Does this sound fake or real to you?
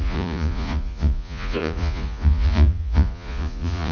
fake